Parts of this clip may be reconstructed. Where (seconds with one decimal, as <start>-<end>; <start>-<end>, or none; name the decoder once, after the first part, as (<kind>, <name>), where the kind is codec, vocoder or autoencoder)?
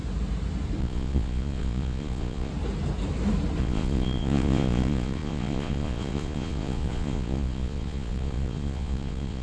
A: 0.8-2.5 (vocoder, Vocos); 3.6-9.4